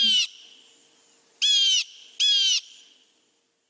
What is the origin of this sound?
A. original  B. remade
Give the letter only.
A